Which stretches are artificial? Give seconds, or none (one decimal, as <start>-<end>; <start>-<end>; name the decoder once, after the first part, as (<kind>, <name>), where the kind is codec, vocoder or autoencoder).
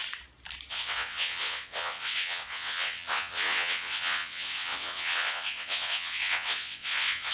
0.7-7.3 (vocoder, WaveNeXt)